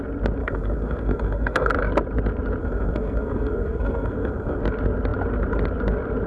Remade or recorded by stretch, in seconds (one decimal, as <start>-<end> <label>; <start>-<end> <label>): 0.0-0.4 recorded; 0.4-1.7 remade; 1.7-2.6 recorded; 2.6-4.6 remade; 4.6-6.3 recorded